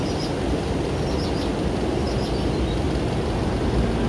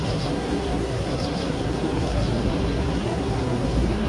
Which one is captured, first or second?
first